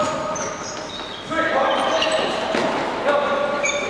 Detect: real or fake real